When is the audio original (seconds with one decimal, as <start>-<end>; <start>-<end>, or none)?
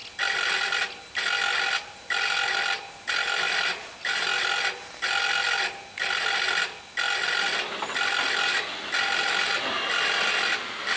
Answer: 0.0-11.0